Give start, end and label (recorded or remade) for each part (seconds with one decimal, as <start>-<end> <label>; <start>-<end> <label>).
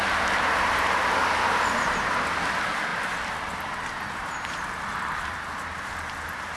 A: 0.0-4.9 recorded; 4.9-5.5 remade; 5.5-6.6 recorded